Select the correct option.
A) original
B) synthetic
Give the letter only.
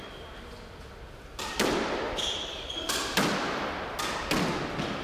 A